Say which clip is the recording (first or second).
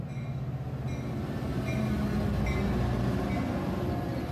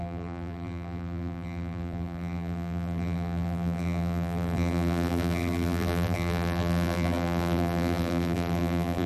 first